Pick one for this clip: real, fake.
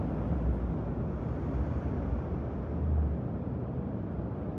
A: real